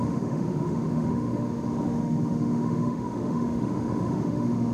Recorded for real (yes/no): no